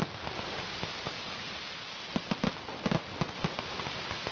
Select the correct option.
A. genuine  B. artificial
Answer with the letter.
A